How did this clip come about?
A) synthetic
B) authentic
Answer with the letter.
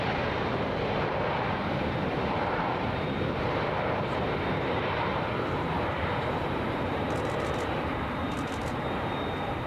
A